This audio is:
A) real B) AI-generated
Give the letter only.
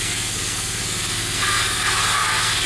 B